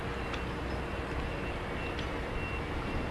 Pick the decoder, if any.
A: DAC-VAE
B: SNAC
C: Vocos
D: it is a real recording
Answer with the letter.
D